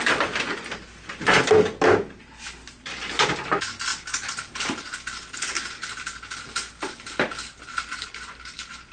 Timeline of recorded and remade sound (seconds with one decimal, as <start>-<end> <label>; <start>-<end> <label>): 0.0-8.9 recorded